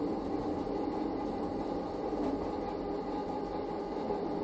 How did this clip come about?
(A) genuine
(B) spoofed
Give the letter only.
A